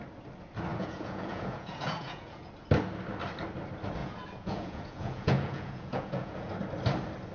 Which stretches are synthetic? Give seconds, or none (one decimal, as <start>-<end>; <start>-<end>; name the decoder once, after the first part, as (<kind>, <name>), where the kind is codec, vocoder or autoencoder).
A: 0.7-2.5 (vocoder, Vocos); 4.0-6.5

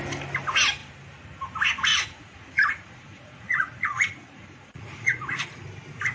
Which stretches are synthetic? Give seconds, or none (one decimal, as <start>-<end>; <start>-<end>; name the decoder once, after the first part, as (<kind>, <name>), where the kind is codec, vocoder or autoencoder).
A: 1.9-5.6 (vocoder, Vocos)

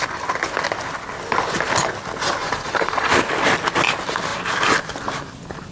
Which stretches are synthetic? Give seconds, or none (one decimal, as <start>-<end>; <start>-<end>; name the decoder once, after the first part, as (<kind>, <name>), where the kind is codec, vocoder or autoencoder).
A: 2.4-3.1 (vocoder, Vocos)

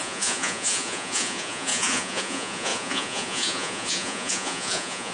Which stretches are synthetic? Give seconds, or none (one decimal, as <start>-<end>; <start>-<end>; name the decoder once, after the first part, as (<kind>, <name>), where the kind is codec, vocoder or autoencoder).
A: 0.0-5.1 (vocoder, Vocos)

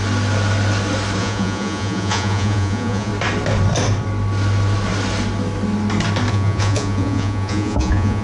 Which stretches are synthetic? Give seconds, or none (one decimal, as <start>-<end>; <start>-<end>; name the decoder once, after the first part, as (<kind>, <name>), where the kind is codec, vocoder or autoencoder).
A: 1.2-3.1 (vocoder, Vocos); 6.3-8.2